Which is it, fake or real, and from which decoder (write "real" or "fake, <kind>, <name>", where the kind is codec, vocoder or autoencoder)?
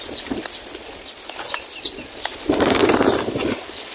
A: real